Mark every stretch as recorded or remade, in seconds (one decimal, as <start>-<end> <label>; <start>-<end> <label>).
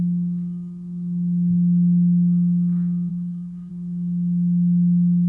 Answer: 0.0-3.1 recorded; 3.1-3.7 remade; 3.7-5.3 recorded